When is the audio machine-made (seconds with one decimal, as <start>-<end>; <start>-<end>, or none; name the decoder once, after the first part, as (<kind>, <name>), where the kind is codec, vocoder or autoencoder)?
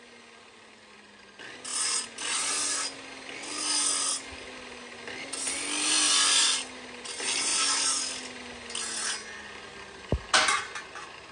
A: none